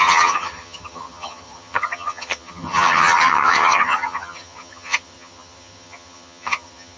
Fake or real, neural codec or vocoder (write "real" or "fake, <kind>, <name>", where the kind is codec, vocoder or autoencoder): fake, vocoder, HiFi-GAN